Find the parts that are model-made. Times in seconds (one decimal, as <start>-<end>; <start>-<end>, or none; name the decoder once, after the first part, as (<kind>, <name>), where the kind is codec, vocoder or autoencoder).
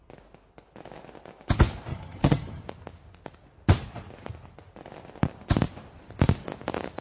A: 1.9-2.6 (vocoder, HiFi-GAN)